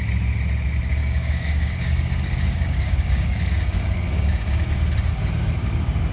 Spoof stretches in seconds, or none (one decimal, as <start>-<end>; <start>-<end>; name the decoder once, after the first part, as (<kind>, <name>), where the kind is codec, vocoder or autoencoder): 1.0-4.7 (codec, DAC)

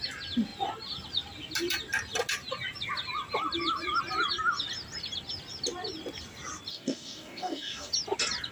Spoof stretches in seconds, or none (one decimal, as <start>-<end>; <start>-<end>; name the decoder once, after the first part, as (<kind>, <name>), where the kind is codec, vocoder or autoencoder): 6.7-7.9 (codec, DAC)

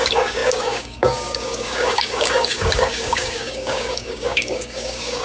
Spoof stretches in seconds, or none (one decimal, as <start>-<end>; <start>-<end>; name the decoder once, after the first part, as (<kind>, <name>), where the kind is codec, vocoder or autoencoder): 0.0-5.2 (codec, DAC)

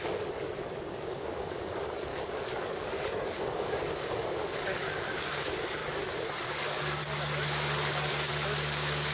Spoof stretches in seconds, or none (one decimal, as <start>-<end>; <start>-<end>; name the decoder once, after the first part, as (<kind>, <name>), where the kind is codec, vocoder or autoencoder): 0.0-5.8 (codec, DAC); 6.4-7.0; 8.3-9.1

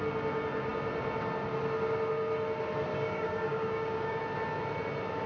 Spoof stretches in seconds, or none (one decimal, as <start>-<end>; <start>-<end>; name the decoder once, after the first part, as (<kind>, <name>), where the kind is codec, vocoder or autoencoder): 2.9-4.2 (codec, DAC)

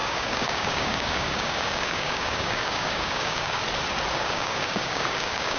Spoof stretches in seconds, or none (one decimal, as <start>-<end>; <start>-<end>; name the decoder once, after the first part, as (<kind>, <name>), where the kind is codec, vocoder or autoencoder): 0.0-3.6 (codec, DAC); 4.1-5.6

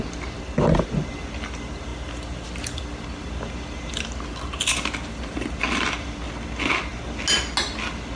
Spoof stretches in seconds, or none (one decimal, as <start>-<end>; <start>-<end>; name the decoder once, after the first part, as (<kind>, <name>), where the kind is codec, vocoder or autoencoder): none